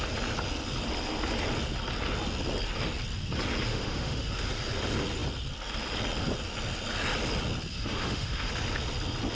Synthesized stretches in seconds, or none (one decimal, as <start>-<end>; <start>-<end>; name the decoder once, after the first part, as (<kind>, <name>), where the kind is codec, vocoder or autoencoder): 3.7-4.5 (autoencoder, DAC-VAE); 7.7-8.5